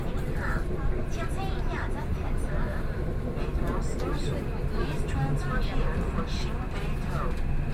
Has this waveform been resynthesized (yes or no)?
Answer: no